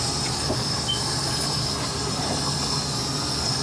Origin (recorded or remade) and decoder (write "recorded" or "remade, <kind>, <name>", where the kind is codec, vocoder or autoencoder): recorded